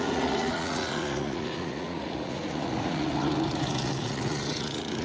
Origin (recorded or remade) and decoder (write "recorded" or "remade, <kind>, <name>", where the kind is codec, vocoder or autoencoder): remade, vocoder, Vocos